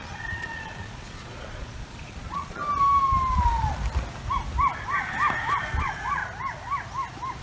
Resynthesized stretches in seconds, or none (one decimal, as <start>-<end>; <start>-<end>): 0.0-2.6; 5.8-6.2